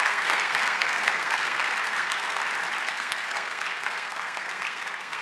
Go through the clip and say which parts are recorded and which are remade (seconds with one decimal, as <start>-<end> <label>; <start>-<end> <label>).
0.0-2.4 remade; 2.4-2.9 recorded; 2.9-5.2 remade